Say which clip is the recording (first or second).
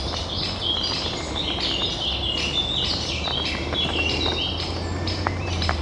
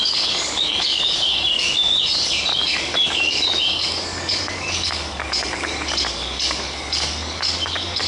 first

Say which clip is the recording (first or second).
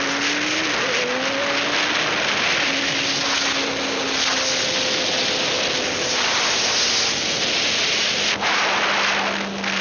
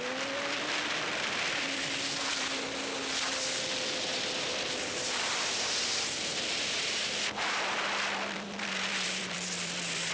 first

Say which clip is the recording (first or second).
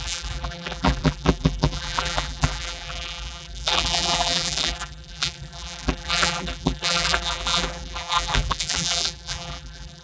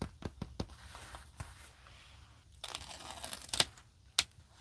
second